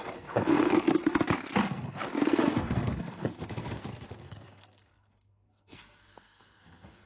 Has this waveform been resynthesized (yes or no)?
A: yes